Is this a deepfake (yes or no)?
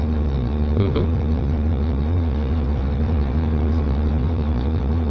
yes